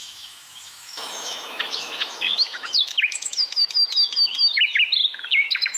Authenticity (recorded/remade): remade